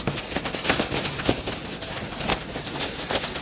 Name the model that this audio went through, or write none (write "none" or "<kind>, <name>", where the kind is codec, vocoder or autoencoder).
none